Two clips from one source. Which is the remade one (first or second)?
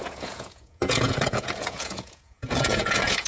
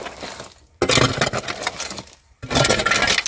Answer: first